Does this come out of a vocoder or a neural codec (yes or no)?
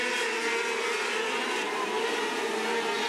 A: no